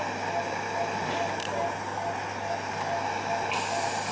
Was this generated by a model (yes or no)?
no